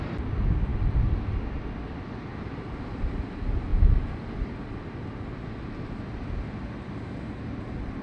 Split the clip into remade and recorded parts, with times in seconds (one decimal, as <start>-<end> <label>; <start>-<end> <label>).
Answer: 0.0-8.0 recorded